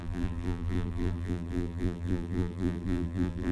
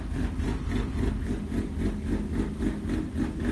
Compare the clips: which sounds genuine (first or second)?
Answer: second